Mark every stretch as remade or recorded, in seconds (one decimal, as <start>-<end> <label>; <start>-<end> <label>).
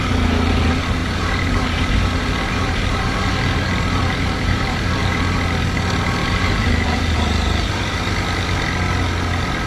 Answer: 0.0-1.0 recorded; 1.0-5.2 remade; 5.2-6.2 recorded; 6.2-8.1 remade; 8.1-9.7 recorded